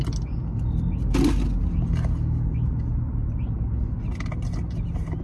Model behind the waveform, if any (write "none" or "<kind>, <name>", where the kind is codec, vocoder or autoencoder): none